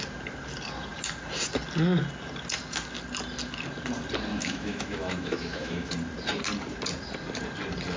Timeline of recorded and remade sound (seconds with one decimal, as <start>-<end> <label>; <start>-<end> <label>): 0.0-4.3 recorded; 4.3-5.9 remade; 5.9-8.0 recorded